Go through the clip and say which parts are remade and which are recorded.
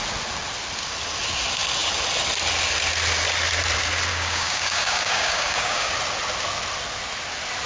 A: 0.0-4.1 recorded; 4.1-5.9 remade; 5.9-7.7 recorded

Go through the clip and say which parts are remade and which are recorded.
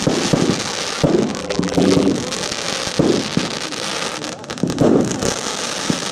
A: 0.0-1.4 recorded; 1.4-2.1 remade; 2.1-6.1 recorded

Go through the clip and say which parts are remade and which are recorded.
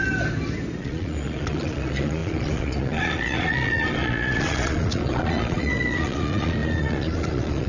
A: 0.0-0.8 recorded; 0.8-7.7 remade